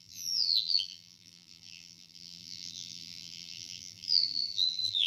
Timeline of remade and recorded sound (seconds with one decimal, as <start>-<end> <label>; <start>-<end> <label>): 0.0-5.1 remade